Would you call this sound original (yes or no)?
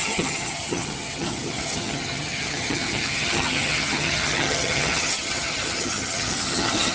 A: no